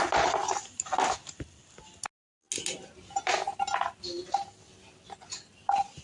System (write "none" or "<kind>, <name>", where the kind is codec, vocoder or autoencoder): none